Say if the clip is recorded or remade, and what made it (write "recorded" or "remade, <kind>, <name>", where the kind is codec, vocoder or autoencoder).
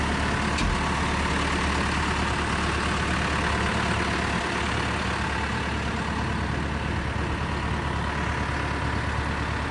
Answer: recorded